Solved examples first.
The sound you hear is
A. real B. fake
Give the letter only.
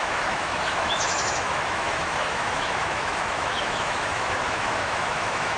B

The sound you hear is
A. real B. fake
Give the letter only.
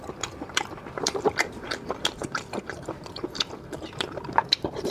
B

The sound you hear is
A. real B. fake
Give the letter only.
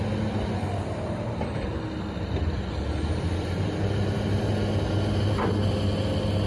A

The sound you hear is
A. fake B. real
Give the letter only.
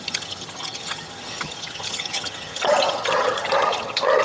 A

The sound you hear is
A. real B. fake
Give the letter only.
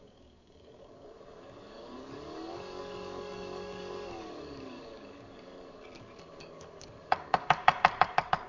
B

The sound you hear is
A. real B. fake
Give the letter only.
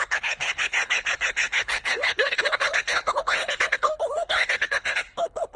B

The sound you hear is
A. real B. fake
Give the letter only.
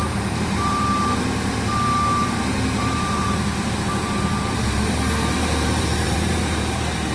B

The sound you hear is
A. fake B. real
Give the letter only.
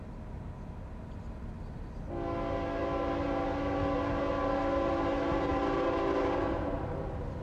B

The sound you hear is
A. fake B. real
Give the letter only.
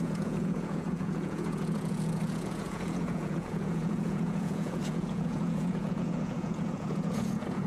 A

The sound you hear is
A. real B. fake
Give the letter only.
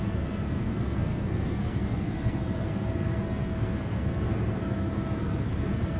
B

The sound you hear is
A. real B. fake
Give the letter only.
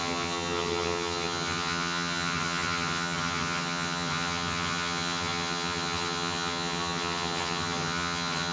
B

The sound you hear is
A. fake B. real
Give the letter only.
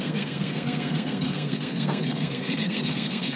A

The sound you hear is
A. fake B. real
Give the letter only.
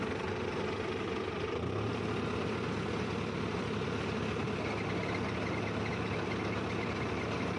B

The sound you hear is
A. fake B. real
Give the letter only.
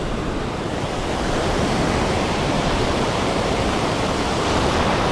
A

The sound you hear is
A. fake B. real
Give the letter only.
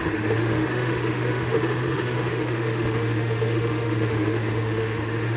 A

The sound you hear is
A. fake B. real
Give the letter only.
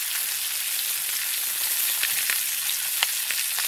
B